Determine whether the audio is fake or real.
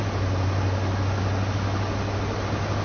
real